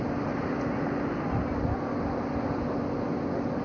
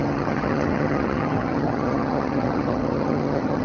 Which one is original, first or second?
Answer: first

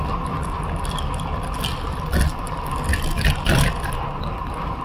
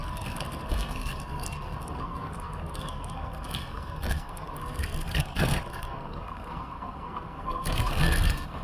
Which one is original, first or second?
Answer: first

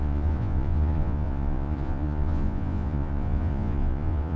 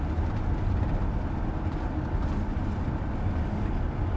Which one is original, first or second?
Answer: second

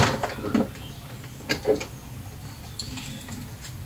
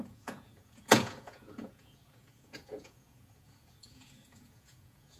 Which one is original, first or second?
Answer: first